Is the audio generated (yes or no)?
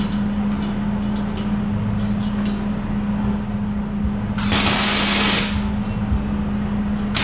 no